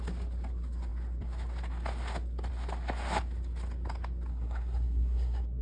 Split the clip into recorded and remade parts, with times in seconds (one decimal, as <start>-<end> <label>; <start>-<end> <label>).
0.0-4.3 recorded; 4.3-5.6 remade